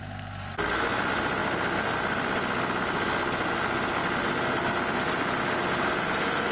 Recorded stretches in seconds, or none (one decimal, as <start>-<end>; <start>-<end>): 0.0-6.5